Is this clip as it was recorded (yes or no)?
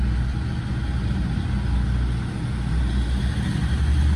yes